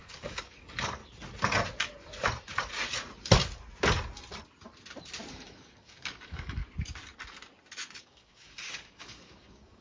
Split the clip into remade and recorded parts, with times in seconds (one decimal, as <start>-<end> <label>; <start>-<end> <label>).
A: 0.0-1.0 remade; 1.0-5.3 recorded; 5.3-6.6 remade; 6.6-8.0 recorded; 8.0-9.8 remade